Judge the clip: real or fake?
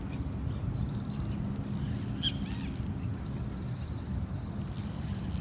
real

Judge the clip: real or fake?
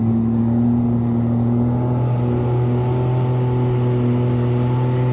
real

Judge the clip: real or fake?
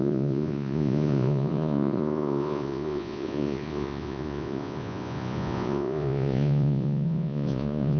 fake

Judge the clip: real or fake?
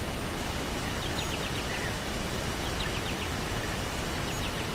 real